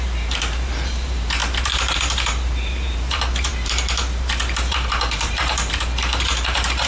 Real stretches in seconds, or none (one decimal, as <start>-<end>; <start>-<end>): none